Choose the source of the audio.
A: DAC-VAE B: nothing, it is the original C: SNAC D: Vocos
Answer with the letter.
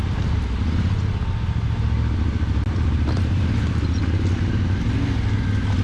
B